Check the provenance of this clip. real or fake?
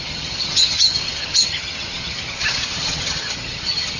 fake